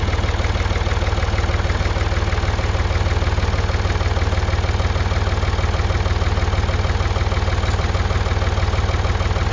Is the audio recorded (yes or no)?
yes